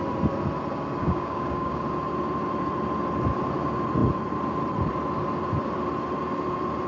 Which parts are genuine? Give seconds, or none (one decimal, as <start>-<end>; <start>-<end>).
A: 0.0-1.0; 1.8-6.9